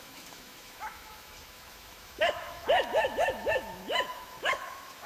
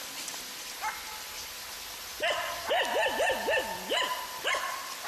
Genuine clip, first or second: second